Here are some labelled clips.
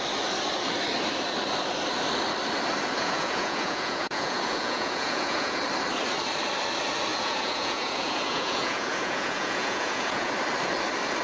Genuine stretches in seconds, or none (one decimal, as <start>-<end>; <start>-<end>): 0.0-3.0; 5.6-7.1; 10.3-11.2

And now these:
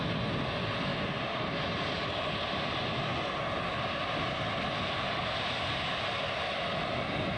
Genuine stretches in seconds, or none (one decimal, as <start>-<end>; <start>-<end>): 0.0-7.4

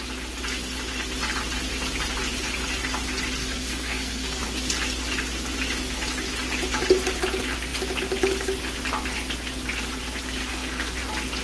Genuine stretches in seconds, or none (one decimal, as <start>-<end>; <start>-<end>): 0.0-3.4; 4.4-10.4; 11.0-11.4

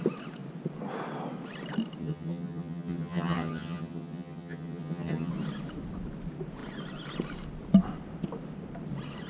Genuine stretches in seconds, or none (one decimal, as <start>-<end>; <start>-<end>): 0.0-2.0; 5.3-9.3

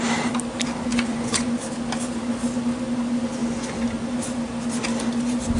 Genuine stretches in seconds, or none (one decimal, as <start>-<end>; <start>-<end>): 0.0-0.9; 1.6-5.6